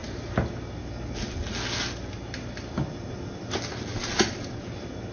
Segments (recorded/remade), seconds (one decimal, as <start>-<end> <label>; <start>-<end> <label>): 0.0-5.1 recorded

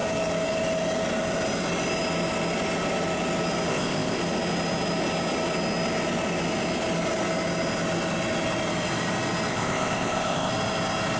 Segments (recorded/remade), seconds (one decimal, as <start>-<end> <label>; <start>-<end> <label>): 0.0-3.7 recorded; 3.7-4.2 remade; 4.2-9.5 recorded; 9.5-10.5 remade; 10.5-11.2 recorded

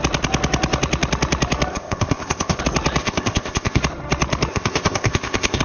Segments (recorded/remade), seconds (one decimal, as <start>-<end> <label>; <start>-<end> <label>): 0.0-1.7 recorded; 1.7-2.6 remade; 2.6-3.0 recorded; 3.0-3.8 remade; 3.8-4.5 recorded; 4.5-5.6 remade

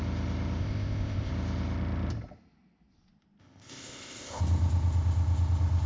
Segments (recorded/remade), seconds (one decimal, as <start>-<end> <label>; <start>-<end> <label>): 0.0-0.6 recorded; 0.6-1.3 remade; 1.3-3.4 recorded; 3.4-4.4 remade; 4.4-5.9 recorded

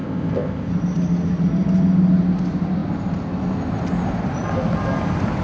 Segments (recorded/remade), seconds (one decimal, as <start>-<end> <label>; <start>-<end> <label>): 0.0-0.7 remade; 0.7-5.4 recorded

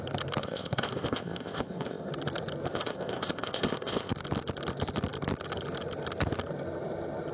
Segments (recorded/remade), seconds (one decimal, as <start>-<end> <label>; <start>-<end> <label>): 0.0-0.4 recorded; 0.4-2.1 remade; 2.1-2.7 recorded; 2.7-4.1 remade; 4.1-7.3 recorded

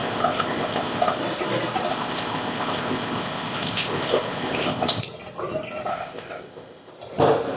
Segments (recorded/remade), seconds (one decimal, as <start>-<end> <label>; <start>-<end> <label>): 0.0-1.2 remade; 1.2-1.9 recorded; 1.9-5.0 remade; 5.0-5.9 recorded; 5.9-6.9 remade; 6.9-7.6 recorded